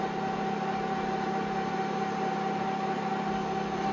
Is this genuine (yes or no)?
yes